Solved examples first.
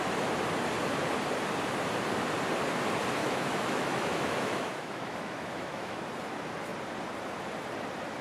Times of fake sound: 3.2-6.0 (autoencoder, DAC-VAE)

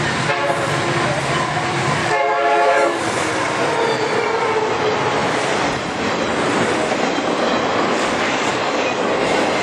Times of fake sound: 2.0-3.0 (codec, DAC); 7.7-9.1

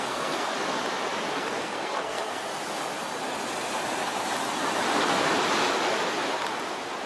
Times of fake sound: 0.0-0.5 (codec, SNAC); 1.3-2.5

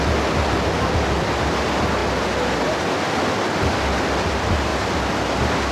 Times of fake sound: none

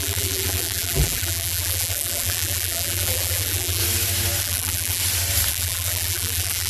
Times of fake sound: 0.0-3.8 (vocoder, BigVGAN v2); 4.4-5.0; 5.5-6.7

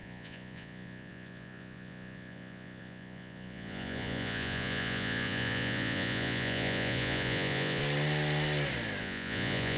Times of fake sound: 0.0-7.8 (vocoder, Vocos); 9.0-9.8

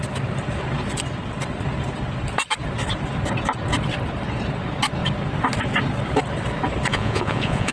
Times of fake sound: 6.9-7.7 (vocoder, Vocos)

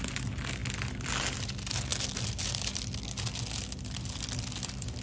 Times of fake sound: none